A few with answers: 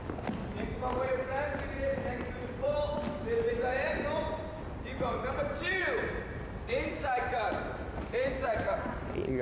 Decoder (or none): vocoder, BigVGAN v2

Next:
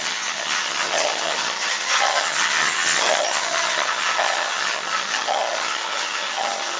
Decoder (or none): vocoder, HiFi-GAN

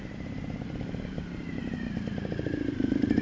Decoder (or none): vocoder, BigVGAN v2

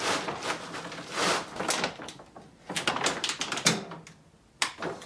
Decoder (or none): none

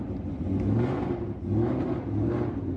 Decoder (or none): none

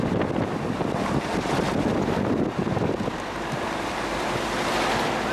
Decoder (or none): none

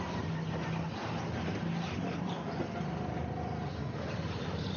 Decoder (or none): none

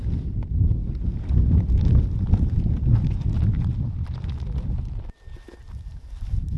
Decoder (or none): none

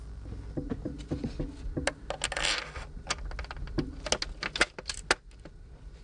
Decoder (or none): none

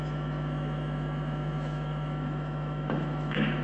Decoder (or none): autoencoder, DAC-VAE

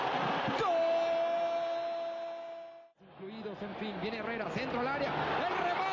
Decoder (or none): none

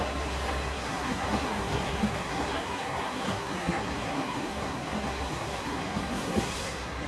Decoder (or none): codec, SNAC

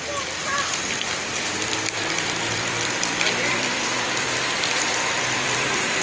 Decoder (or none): vocoder, BigVGAN v2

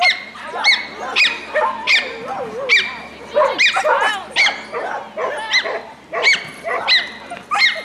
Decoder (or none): none